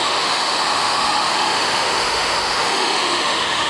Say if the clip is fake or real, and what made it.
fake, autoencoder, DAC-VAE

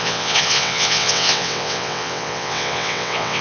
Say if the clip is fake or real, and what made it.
fake, vocoder, WaveNeXt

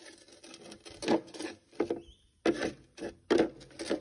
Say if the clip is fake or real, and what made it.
real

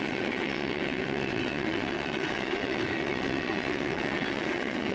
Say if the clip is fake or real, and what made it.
fake, vocoder, WaveNeXt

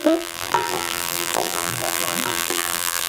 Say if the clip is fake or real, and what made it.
fake, vocoder, BigVGAN v2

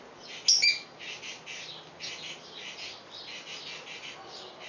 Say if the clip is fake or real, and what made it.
real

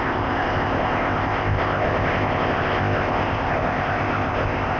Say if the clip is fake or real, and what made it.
fake, codec, ZipCodec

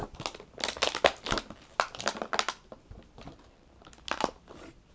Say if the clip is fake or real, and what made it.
real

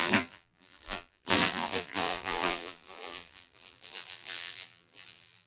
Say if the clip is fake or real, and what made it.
fake, vocoder, BigVGAN v2